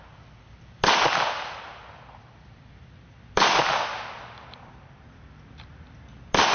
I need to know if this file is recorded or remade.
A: recorded